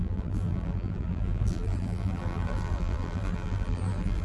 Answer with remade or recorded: remade